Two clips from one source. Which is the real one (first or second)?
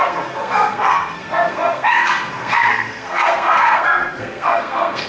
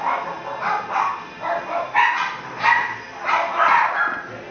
second